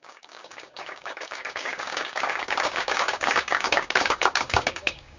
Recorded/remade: remade